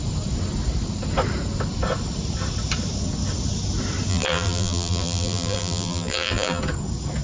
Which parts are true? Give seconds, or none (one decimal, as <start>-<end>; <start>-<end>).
0.0-4.1; 6.6-7.2